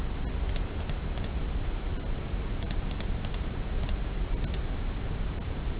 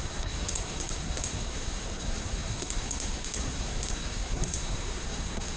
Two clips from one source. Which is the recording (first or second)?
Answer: first